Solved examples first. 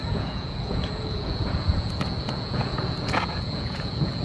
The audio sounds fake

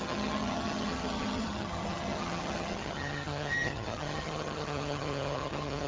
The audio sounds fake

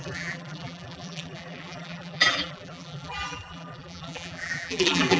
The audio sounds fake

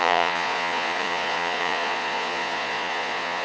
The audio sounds fake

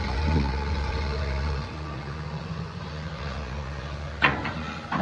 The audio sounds fake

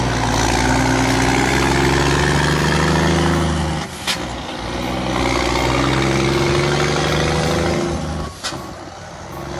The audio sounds real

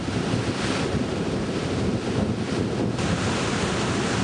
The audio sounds real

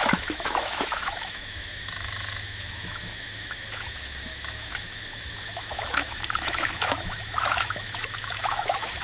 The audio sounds fake